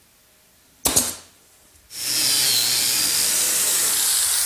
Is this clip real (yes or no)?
yes